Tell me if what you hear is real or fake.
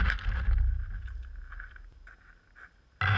real